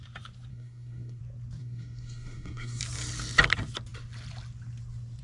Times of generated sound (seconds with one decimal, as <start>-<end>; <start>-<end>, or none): 0.5-1.2; 1.6-2.8